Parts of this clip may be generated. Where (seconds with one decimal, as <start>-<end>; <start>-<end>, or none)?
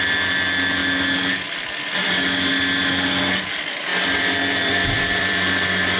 3.9-6.0